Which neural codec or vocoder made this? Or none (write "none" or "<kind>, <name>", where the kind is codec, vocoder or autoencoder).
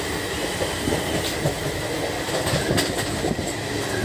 none